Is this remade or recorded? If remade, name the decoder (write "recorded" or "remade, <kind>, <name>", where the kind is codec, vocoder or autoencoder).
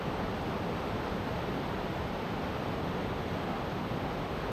recorded